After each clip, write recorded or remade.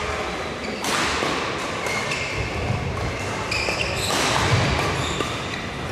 recorded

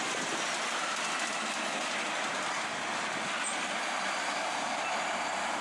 recorded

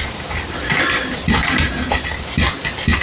recorded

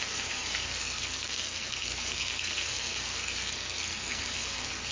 remade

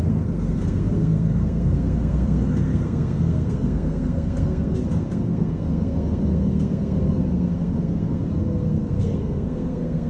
remade